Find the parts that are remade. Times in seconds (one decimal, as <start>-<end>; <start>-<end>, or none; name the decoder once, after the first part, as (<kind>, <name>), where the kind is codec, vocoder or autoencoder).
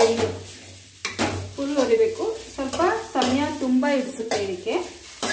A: none